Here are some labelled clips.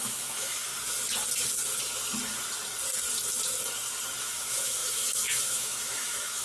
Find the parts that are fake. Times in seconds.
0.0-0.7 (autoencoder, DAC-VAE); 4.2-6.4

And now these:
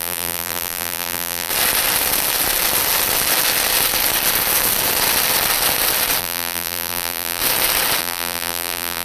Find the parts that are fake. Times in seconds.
0.0-1.5 (vocoder, BigVGAN v2); 6.2-7.4; 8.0-9.0

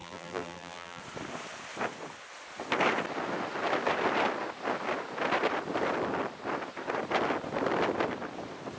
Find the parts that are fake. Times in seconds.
0.0-1.0 (vocoder, BigVGAN v2)

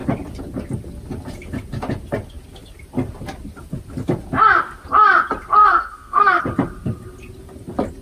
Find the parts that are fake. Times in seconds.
5.6-6.4 (codec, SNAC)

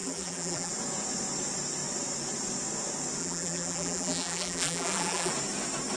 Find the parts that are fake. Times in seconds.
0.0-0.7 (vocoder, BigVGAN v2); 3.2-5.3

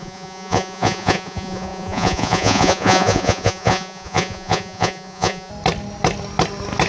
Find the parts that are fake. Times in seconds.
0.0-5.5 (vocoder, Vocos)

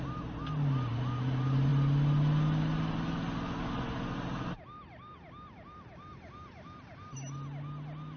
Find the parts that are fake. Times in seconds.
none

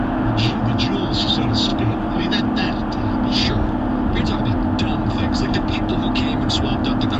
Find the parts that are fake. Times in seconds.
1.7-2.4 (vocoder, BigVGAN v2)